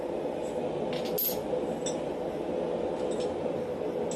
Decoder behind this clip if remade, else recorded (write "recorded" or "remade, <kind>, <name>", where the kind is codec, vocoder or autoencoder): recorded